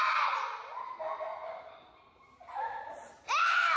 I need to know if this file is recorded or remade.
recorded